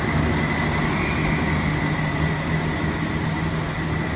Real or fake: real